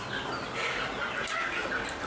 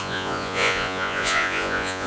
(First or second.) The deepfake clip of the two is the second